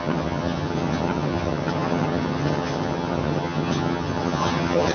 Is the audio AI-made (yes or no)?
yes